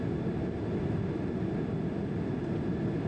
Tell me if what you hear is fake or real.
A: real